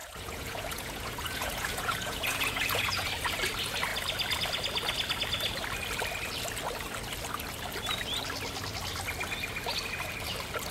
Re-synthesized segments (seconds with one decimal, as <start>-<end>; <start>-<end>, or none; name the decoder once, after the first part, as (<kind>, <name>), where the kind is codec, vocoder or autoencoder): 0.0-3.1 (vocoder, Vocos)